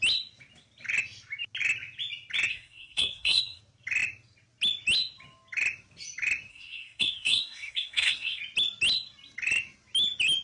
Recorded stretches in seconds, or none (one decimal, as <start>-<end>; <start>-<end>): 0.0-2.5; 3.6-6.5; 8.4-10.4